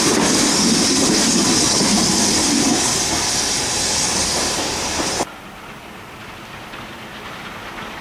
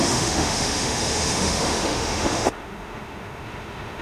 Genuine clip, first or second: first